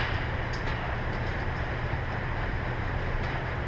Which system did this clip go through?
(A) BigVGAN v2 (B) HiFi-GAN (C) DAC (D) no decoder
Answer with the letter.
A